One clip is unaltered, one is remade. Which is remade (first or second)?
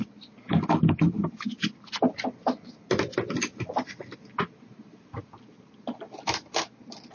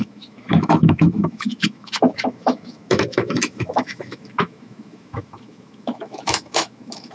second